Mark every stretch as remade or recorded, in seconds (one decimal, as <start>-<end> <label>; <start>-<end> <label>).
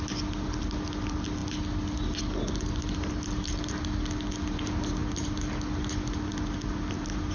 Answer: 0.0-7.3 recorded